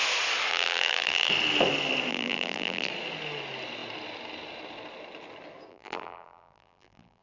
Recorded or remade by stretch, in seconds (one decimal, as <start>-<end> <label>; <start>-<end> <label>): 0.0-0.5 recorded; 0.5-1.3 remade; 1.3-2.1 recorded; 2.1-2.9 remade; 2.9-5.7 recorded; 5.7-7.2 remade